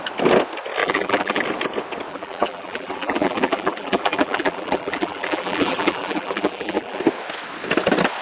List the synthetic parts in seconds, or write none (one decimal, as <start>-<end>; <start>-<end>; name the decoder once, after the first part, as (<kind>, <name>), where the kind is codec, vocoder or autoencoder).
0.8-1.4 (vocoder, BigVGAN v2); 2.1-7.0

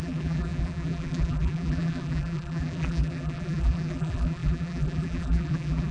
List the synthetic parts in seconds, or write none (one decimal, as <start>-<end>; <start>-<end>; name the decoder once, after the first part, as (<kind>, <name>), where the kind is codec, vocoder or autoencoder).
0.0-5.9 (vocoder, BigVGAN v2)

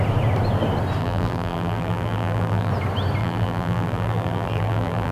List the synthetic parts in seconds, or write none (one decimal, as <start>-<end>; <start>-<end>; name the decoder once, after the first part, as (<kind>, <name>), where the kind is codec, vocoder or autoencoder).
1.0-2.7 (vocoder, BigVGAN v2); 3.2-5.1